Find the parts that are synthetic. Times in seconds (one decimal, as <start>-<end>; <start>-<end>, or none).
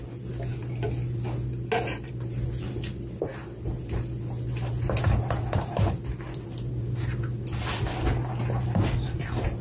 none